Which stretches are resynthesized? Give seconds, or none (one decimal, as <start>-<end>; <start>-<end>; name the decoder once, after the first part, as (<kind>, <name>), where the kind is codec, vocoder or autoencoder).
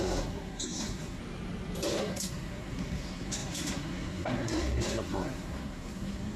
0.0-1.2 (codec, SNAC); 2.0-6.4